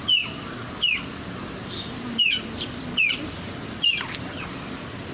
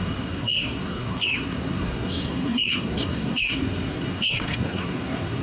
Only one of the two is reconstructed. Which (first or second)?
second